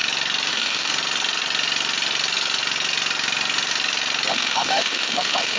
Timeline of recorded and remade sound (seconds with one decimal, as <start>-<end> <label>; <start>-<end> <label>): 0.0-0.5 recorded; 0.5-0.9 remade; 0.9-4.3 recorded; 4.3-5.6 remade